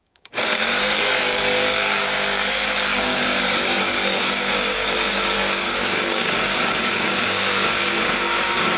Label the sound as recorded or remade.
remade